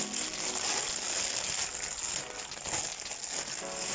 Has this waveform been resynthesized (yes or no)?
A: no